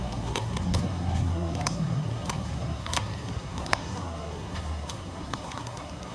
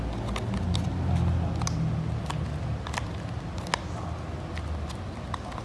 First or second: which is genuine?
second